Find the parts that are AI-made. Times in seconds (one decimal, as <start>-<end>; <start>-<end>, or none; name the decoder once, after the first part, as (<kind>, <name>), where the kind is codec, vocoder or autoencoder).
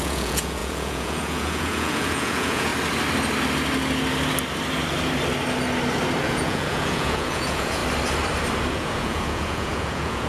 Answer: 0.0-2.7 (vocoder, Vocos); 6.2-7.8; 8.7-10.3